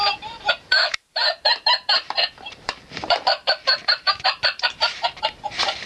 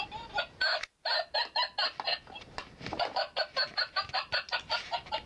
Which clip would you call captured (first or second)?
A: second